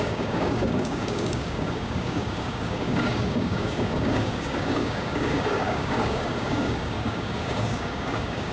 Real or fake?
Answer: fake